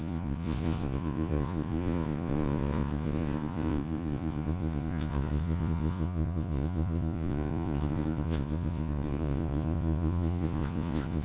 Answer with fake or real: fake